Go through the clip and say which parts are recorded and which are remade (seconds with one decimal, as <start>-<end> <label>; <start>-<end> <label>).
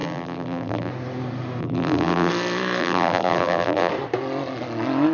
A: 0.0-0.9 remade; 0.9-1.6 recorded; 1.6-2.3 remade; 2.3-2.8 recorded; 2.8-3.9 remade; 3.9-5.1 recorded